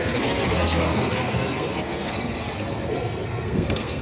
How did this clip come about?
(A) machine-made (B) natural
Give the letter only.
A